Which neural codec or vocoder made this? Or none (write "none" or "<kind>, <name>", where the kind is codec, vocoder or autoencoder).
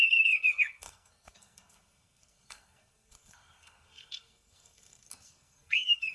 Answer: codec, SNAC